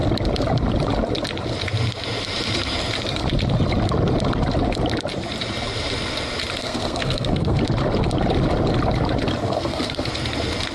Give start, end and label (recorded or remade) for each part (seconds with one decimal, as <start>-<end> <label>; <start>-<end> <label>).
0.0-6.6 recorded; 6.6-7.6 remade; 7.6-9.4 recorded; 9.4-10.1 remade; 10.1-10.7 recorded